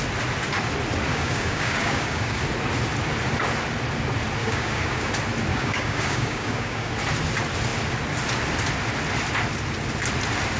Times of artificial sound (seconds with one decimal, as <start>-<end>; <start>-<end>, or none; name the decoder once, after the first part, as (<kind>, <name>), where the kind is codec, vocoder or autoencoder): 1.1-2.4 (codec, DAC); 4.4-5.1; 5.5-6.9

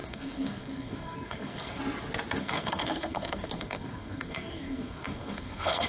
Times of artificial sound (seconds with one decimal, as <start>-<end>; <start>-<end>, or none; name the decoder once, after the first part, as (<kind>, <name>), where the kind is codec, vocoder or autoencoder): 0.0-1.8 (codec, SNAC); 2.4-5.9